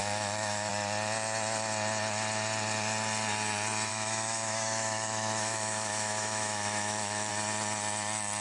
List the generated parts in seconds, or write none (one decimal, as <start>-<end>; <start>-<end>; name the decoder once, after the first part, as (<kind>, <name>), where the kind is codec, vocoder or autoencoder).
0.0-0.7 (autoencoder, DAC-VAE); 3.9-7.3